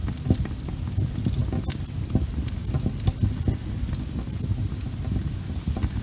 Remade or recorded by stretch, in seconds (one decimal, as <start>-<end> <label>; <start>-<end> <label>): 0.0-6.0 recorded